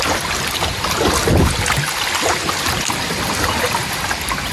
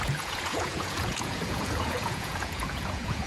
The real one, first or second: first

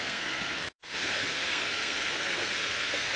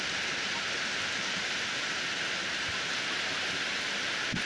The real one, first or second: second